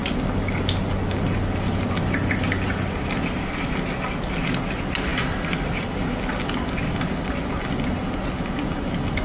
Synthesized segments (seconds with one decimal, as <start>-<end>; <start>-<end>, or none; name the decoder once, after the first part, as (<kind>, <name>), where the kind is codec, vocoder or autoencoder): none